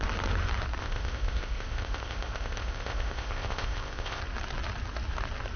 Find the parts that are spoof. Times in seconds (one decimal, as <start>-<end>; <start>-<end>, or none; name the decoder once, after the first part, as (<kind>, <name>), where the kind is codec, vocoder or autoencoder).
0.8-4.2 (codec, ZipCodec)